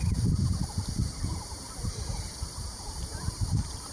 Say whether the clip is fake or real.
fake